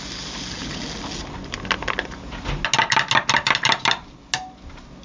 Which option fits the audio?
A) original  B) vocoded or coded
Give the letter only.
A